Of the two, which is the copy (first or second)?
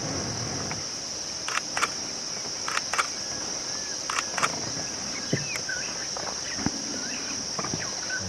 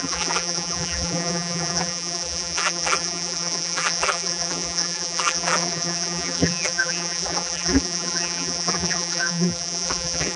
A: second